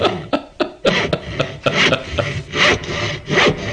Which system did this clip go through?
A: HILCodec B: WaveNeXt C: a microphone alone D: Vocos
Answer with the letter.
C